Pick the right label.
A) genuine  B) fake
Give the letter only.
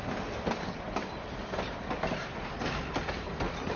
A